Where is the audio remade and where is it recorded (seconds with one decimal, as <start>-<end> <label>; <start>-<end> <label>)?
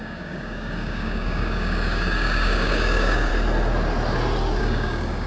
0.0-3.3 remade; 3.3-4.6 recorded; 4.6-5.3 remade